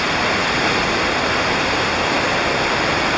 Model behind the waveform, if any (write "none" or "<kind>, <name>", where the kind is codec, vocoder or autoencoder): none